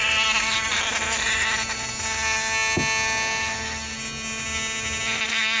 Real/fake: real